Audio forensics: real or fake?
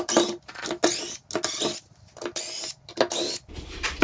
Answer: real